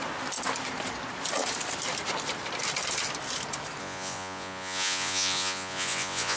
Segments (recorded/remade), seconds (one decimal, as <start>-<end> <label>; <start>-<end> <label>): 0.0-3.8 recorded; 3.8-6.4 remade